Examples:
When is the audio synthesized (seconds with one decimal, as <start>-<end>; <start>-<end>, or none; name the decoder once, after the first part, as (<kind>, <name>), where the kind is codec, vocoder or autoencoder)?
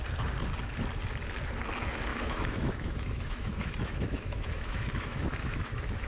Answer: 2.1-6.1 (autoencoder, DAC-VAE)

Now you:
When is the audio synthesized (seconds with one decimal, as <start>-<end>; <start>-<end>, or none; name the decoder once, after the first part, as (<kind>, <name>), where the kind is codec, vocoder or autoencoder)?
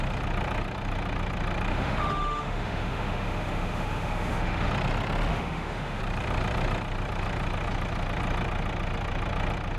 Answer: 1.7-4.7 (autoencoder, DAC-VAE); 5.3-6.0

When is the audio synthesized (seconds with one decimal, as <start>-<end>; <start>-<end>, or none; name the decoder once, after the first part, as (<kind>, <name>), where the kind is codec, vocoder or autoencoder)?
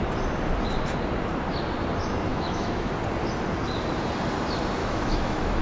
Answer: 2.3-2.9 (autoencoder, DAC-VAE); 4.8-5.6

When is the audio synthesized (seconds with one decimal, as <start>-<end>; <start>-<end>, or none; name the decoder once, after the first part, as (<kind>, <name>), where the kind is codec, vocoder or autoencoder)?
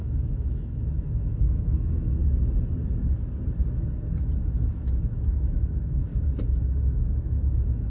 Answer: 0.0-2.2 (autoencoder, DAC-VAE); 4.9-6.1; 6.8-7.9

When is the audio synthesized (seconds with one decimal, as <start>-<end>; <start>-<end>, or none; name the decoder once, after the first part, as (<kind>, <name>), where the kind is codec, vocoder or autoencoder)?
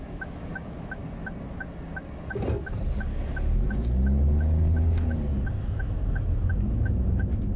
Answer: 0.0-1.0 (autoencoder, DAC-VAE); 5.6-7.6